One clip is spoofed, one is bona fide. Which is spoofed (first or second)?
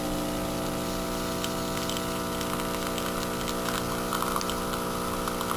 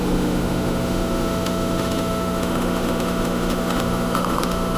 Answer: second